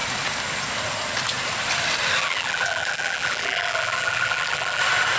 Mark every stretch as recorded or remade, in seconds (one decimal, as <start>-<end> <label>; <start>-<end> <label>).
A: 0.0-2.2 recorded; 2.2-4.8 remade; 4.8-5.2 recorded